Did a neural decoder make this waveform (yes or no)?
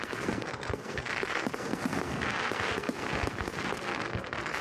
yes